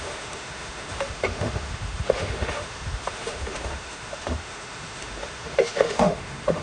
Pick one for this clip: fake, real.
fake